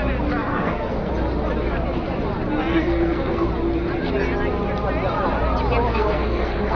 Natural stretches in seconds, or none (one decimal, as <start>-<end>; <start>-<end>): 0.0-0.5; 1.1-2.7; 3.5-5.9